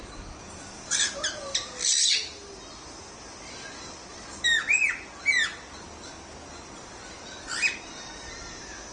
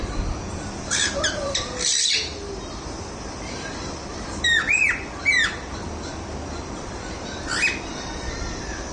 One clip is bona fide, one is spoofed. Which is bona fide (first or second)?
first